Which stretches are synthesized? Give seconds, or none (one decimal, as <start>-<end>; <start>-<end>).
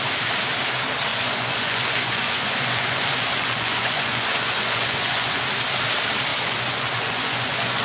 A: 1.1-5.4; 6.3-7.8